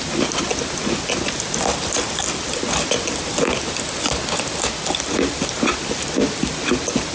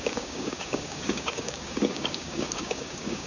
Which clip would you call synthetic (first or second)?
second